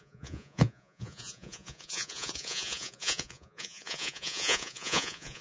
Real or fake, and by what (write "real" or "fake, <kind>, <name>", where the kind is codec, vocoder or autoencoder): fake, vocoder, Vocos